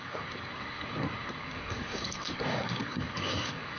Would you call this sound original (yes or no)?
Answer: no